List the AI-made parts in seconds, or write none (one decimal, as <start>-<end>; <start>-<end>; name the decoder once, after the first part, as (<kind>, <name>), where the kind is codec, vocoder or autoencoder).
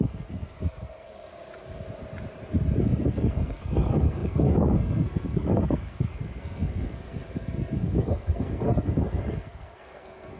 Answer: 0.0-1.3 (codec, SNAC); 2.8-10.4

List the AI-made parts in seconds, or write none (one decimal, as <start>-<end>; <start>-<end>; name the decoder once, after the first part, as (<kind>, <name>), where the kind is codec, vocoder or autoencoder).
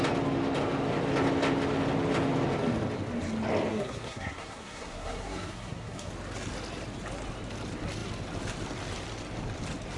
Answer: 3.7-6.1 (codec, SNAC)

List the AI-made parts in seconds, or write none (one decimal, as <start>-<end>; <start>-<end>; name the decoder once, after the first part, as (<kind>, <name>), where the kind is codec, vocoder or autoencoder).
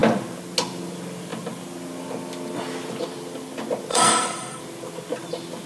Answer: 3.9-4.6 (codec, SNAC)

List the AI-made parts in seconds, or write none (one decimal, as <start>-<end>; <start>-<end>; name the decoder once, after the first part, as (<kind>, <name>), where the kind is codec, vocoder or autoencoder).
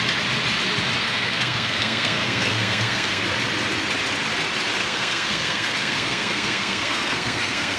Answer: 1.0-3.2 (codec, SNAC); 4.8-7.8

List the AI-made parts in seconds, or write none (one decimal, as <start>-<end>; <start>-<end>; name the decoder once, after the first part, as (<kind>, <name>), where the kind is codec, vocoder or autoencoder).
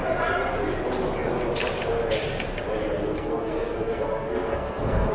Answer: 2.8-5.1 (codec, SNAC)